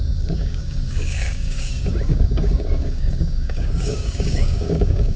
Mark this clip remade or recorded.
remade